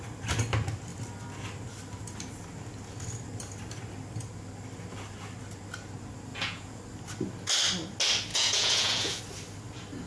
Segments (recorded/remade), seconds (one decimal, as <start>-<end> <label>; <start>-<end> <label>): 0.0-6.3 recorded; 6.3-6.8 remade; 6.8-8.3 recorded; 8.3-9.2 remade; 9.2-10.1 recorded